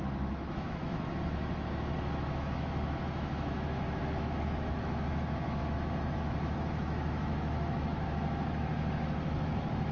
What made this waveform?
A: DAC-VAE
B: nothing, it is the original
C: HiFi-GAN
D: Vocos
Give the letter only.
A